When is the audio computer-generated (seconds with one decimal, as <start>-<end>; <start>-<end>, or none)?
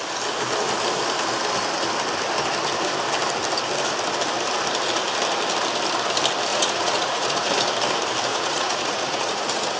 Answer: 6.5-7.5; 8.3-9.8